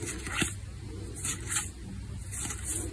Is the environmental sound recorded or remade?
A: recorded